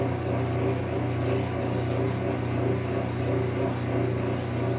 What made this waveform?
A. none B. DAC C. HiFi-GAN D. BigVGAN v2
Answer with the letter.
A